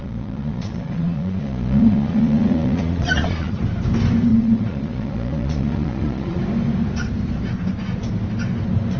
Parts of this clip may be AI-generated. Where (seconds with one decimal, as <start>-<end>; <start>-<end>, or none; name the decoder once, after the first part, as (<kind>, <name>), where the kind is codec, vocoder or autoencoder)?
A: 0.0-3.6 (vocoder, Vocos); 4.3-6.4